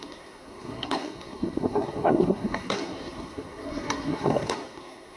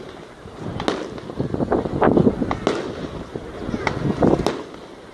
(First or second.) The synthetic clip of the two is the first